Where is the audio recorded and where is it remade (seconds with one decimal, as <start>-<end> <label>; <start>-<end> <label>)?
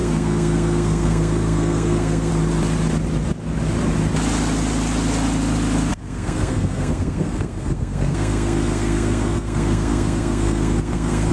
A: 0.0-2.3 remade; 2.3-5.9 recorded; 5.9-11.3 remade